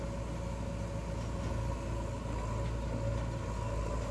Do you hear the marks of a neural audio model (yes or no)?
no